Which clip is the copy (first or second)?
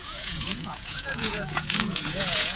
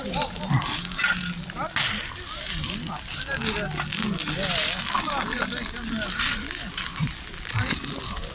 first